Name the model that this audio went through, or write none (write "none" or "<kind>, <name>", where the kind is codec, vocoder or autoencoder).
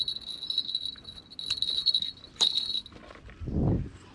none